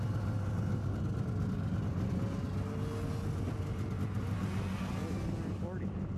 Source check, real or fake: real